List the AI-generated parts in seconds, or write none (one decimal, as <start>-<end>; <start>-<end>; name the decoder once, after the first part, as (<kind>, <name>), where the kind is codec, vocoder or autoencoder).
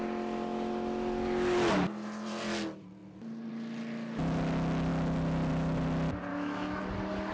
6.3-6.8 (autoencoder, DAC-VAE)